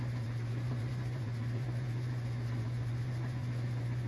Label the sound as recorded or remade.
remade